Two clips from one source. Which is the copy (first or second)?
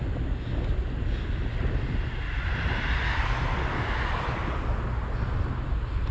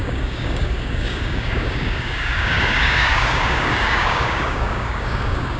second